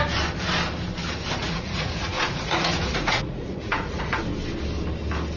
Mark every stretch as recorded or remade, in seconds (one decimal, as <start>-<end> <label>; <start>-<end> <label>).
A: 0.0-1.4 recorded; 1.4-4.2 remade; 4.2-5.4 recorded